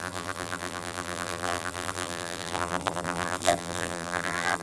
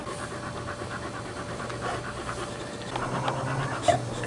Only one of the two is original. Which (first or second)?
second